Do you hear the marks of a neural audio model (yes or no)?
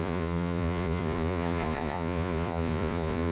yes